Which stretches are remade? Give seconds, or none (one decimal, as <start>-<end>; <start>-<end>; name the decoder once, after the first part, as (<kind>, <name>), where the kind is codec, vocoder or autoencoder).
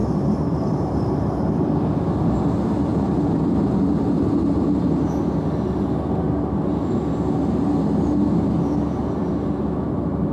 0.0-1.4 (vocoder, BigVGAN v2)